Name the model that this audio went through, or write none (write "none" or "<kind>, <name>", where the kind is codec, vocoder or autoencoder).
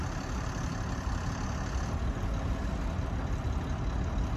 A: none